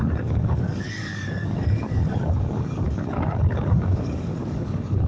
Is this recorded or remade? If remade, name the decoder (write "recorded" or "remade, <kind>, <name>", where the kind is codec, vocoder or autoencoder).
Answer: remade, codec, DAC